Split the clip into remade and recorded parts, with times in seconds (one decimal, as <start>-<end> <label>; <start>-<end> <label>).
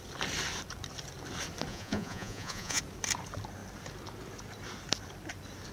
0.0-1.7 recorded; 1.7-2.8 remade; 2.8-5.7 recorded